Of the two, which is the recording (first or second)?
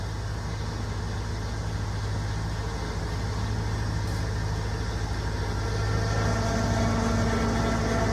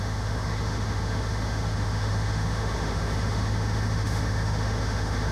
first